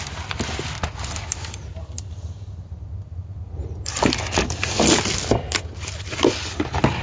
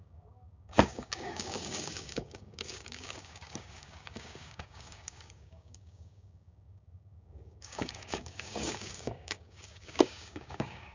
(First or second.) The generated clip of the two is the second